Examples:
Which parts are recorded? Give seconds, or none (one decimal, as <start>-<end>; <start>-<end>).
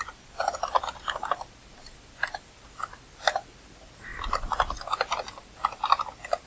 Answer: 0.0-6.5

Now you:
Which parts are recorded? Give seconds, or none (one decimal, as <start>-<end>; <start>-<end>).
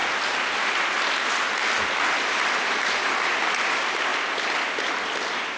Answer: 0.0-5.6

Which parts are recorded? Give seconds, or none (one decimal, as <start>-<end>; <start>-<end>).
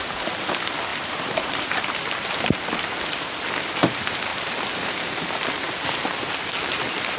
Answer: 0.0-0.9; 2.8-4.3; 4.9-7.2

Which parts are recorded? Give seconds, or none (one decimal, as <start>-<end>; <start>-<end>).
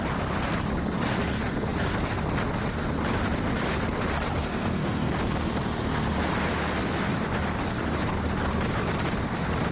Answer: 0.0-4.4; 5.1-9.7